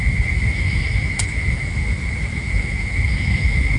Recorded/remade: remade